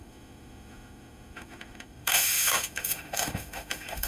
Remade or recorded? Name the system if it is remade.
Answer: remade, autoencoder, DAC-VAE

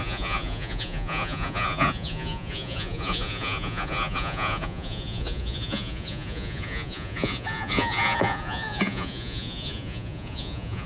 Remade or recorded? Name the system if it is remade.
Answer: remade, vocoder, Vocos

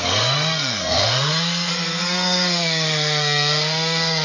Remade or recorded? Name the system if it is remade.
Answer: remade, codec, SNAC